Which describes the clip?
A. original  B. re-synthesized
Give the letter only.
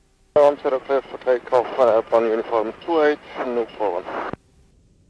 A